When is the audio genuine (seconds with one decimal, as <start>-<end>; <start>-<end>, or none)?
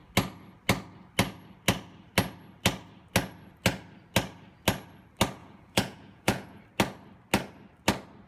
0.0-5.4; 6.6-8.3